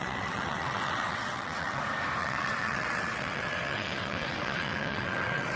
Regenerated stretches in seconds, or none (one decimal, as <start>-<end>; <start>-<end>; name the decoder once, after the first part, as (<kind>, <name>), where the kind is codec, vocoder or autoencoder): 0.0-1.8 (vocoder, WaveNeXt); 2.2-5.6